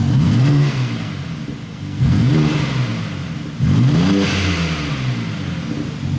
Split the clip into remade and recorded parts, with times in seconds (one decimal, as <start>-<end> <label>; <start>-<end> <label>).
0.0-1.1 remade; 1.1-1.6 recorded; 1.6-2.3 remade; 2.3-6.2 recorded